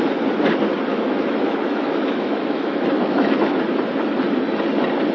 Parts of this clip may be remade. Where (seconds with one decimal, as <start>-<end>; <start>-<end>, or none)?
0.9-3.6